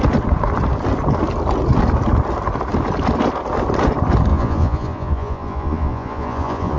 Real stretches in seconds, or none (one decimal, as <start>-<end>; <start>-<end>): 0.0-4.3